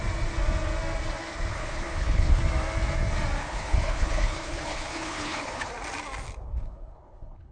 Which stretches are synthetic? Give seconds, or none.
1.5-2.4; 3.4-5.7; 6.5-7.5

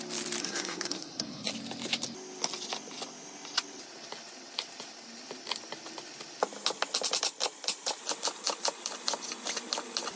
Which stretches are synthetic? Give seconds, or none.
0.4-1.5

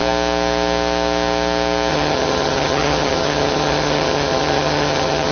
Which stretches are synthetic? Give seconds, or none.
1.9-5.3